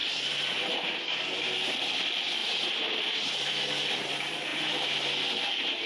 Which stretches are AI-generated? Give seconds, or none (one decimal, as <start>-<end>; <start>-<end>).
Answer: 0.0-0.9; 2.4-3.5